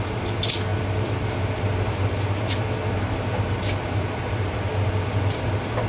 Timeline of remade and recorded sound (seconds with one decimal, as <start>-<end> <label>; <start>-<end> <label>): 0.0-5.9 recorded

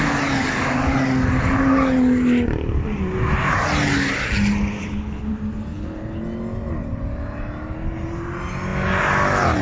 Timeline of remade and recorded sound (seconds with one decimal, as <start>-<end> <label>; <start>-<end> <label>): 0.0-4.8 recorded; 4.8-5.3 remade; 5.3-5.7 recorded; 5.7-6.2 remade; 6.2-9.6 recorded

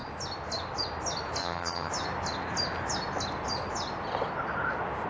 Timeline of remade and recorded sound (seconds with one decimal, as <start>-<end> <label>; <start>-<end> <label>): 0.0-1.4 recorded; 1.4-1.9 remade; 1.9-5.1 recorded

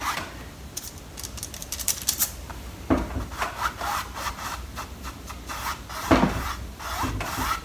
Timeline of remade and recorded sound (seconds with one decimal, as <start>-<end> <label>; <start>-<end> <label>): 0.0-1.6 recorded; 1.6-5.3 remade; 5.3-6.4 recorded; 6.4-7.6 remade

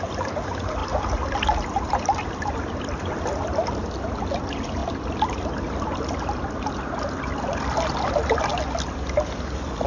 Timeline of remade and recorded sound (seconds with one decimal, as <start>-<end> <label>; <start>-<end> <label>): 0.0-9.9 recorded